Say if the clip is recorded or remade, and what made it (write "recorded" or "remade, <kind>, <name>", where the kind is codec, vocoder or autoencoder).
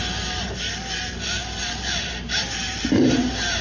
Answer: remade, vocoder, BigVGAN v2